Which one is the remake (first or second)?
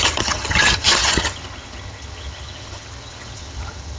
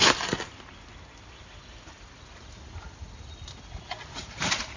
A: first